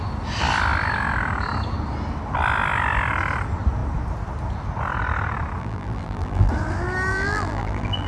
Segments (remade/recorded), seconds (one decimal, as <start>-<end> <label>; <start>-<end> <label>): 0.0-5.6 recorded; 5.6-6.5 remade; 6.5-7.1 recorded; 7.1-8.1 remade